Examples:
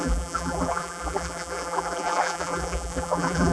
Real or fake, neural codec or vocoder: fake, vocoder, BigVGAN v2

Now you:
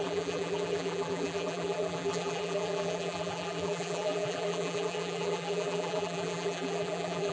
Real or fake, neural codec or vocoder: fake, vocoder, BigVGAN v2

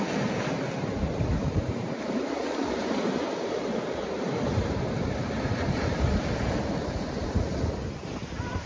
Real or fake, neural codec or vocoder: fake, vocoder, BigVGAN v2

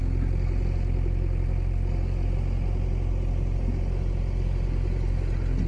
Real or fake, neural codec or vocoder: real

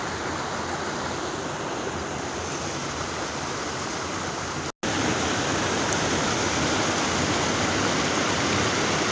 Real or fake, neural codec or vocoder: real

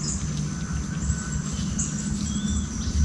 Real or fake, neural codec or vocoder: real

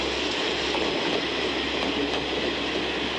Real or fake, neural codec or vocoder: real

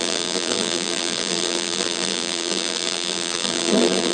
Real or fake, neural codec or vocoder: fake, vocoder, BigVGAN v2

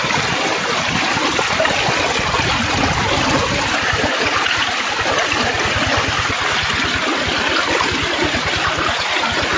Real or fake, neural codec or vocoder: real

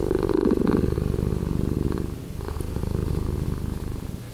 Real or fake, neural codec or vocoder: real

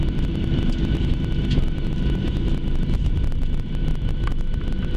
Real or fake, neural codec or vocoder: real